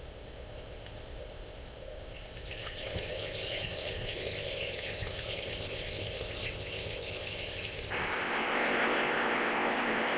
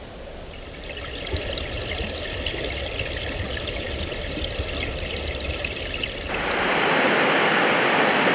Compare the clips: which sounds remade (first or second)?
first